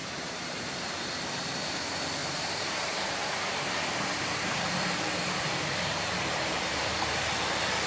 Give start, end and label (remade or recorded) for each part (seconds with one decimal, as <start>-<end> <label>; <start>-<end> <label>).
0.0-1.6 remade; 1.6-2.2 recorded; 2.2-6.9 remade; 6.9-7.9 recorded